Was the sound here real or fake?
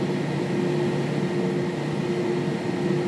real